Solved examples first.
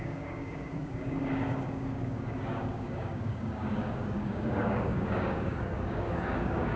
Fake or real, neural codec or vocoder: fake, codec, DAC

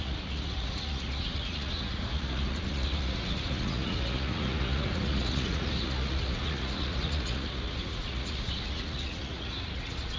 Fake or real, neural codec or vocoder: fake, vocoder, Vocos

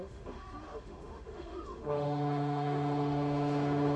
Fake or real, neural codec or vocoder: fake, autoencoder, DAC-VAE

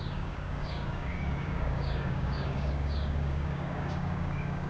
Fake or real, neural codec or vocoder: fake, codec, DAC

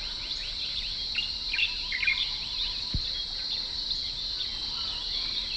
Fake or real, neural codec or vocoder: real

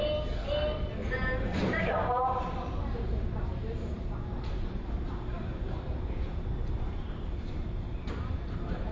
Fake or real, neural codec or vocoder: fake, vocoder, BigVGAN v2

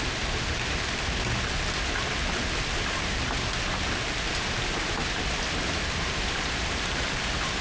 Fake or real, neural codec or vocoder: real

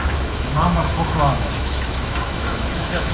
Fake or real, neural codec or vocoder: fake, autoencoder, DAC-VAE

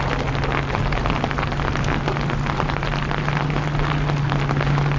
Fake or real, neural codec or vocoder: real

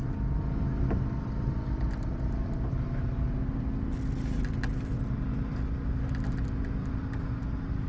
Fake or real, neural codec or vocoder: real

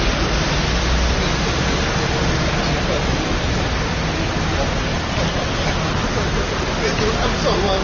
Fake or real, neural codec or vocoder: real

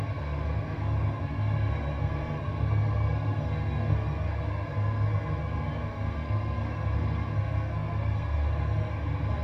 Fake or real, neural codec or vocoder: fake, codec, SNAC